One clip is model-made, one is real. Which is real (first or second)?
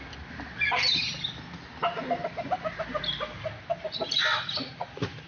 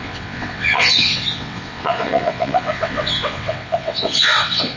first